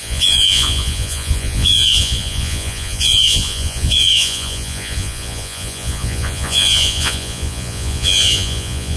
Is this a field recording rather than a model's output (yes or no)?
no